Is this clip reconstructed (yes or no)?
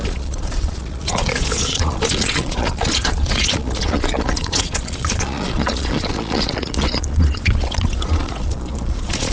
yes